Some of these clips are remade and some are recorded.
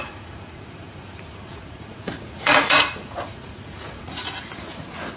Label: remade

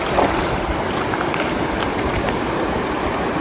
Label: recorded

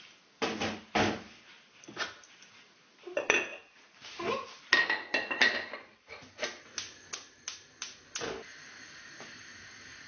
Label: recorded